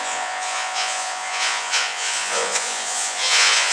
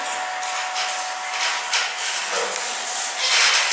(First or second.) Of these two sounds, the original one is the second